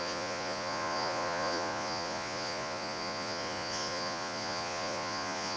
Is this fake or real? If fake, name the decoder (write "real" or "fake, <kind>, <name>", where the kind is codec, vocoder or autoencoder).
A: fake, vocoder, Vocos